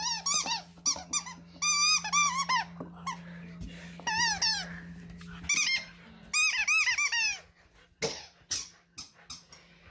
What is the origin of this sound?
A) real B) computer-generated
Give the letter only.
A